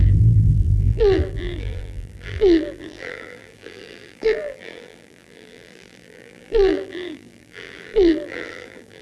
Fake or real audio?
fake